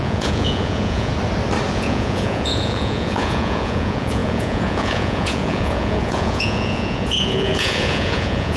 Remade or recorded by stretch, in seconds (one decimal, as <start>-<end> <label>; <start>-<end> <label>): 0.0-1.1 remade; 1.1-1.7 recorded; 1.7-8.6 remade